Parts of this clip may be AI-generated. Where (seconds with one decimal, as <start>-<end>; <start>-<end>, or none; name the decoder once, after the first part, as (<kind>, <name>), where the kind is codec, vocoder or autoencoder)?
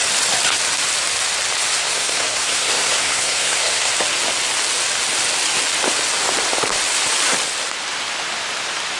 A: 1.7-3.9 (codec, SNAC)